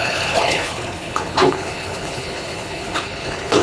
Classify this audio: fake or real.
fake